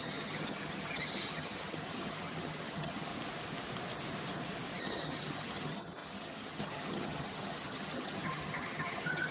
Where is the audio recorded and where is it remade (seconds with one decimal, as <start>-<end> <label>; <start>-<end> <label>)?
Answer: 0.0-3.1 remade; 3.1-4.8 recorded; 4.8-9.3 remade